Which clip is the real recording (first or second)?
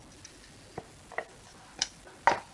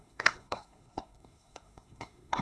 first